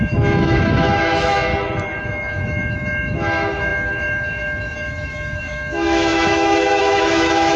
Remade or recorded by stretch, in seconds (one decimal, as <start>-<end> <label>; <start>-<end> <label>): 0.0-1.5 remade; 1.5-2.0 recorded; 2.0-7.6 remade